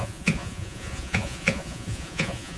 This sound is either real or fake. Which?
fake